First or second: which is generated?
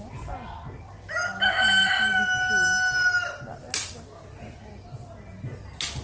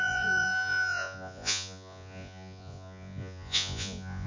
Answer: second